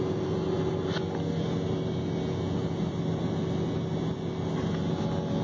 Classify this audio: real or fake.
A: real